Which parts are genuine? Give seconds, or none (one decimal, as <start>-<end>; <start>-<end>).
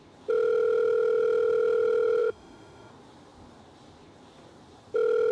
0.0-2.2; 2.9-5.3